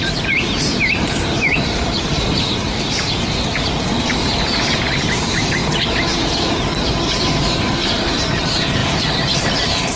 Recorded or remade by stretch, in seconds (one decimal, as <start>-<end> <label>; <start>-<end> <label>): 0.0-10.0 remade